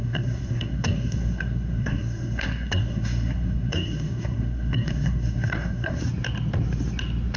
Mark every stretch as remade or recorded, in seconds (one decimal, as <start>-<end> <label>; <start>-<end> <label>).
0.0-6.0 remade; 6.0-7.4 recorded